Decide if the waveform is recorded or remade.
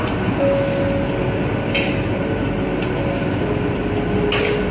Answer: recorded